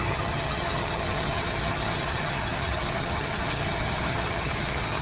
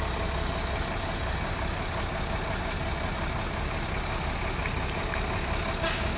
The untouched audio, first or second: second